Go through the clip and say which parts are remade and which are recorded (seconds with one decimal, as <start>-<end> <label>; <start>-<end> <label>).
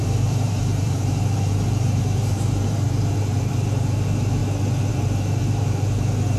0.0-4.4 remade; 4.4-4.9 recorded; 4.9-6.4 remade